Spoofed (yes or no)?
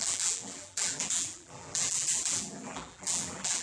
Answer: yes